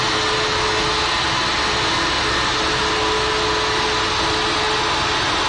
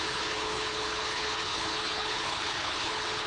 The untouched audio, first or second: first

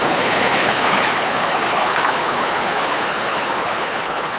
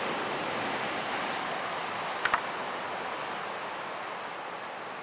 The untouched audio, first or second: second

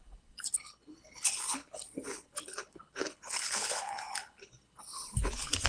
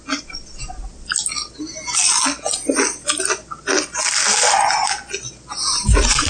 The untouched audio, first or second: second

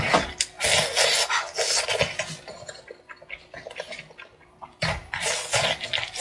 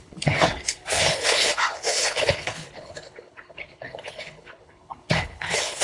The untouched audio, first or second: first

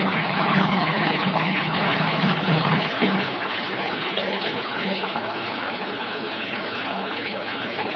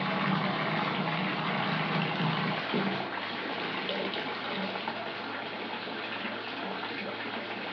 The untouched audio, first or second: second